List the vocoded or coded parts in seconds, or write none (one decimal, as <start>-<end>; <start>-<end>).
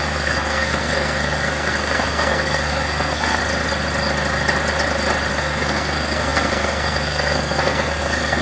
0.0-3.4; 5.3-8.4